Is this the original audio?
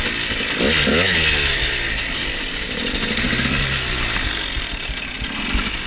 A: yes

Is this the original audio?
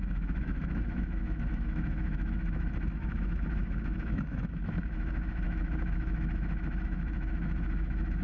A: no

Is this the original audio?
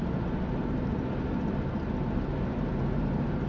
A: yes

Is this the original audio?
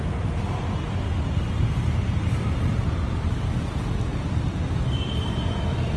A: yes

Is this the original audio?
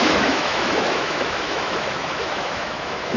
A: no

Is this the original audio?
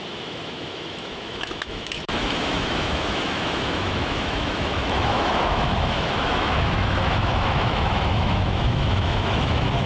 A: no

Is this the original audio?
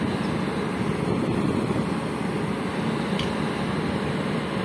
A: yes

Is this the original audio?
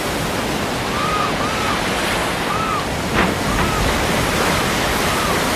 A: yes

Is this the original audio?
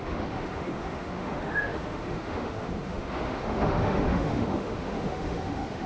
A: no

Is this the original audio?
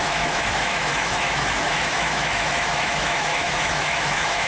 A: no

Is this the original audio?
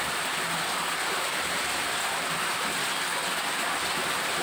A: yes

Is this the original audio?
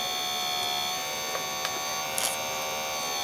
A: yes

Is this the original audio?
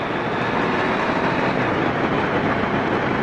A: yes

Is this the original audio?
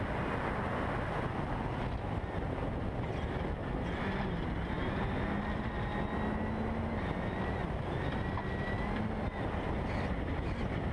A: yes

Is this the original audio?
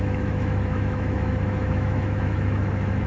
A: no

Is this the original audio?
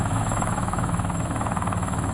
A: no